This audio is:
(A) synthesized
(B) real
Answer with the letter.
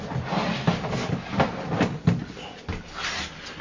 B